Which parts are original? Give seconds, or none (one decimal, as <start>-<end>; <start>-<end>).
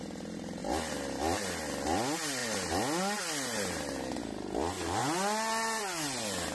0.0-6.5